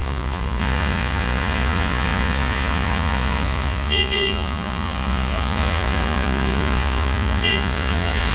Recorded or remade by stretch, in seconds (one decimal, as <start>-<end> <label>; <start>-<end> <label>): 0.0-8.3 remade